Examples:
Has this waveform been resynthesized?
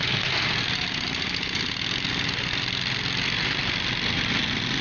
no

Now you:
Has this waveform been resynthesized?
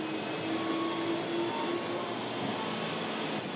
no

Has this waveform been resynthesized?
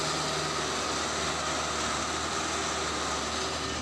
no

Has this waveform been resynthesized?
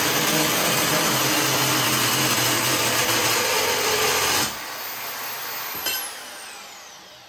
no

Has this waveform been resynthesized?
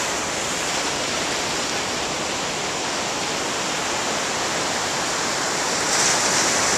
no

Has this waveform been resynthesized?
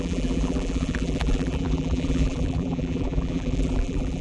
yes